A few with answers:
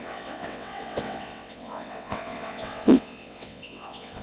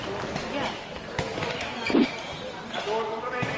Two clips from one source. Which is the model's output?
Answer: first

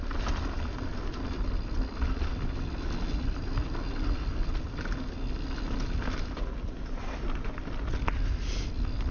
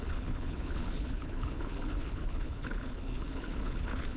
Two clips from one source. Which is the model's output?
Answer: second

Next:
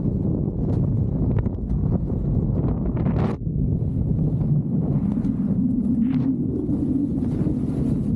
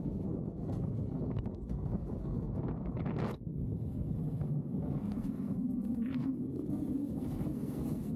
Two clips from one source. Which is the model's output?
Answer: second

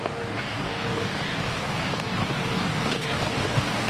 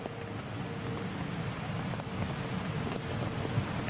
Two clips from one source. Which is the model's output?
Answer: first